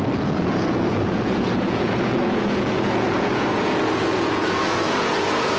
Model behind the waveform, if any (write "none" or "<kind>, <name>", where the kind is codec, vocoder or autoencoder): vocoder, Vocos